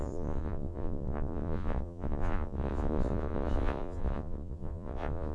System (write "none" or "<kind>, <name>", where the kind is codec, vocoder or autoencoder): vocoder, Vocos